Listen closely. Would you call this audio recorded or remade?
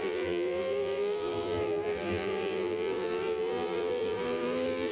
remade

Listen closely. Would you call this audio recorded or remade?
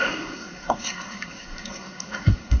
remade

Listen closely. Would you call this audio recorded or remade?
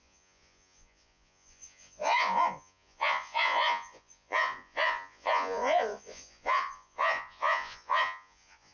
remade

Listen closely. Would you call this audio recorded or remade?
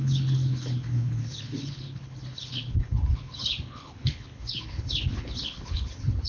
remade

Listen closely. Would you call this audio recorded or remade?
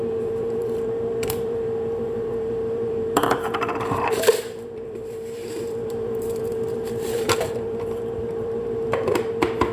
remade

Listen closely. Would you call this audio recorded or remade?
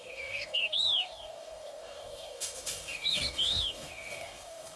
remade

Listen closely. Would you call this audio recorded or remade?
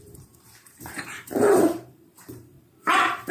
remade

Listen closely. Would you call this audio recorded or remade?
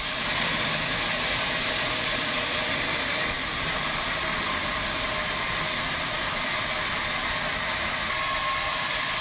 remade